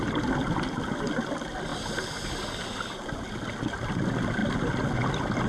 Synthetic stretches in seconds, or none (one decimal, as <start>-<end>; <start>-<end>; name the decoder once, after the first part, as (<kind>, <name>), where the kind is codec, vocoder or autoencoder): none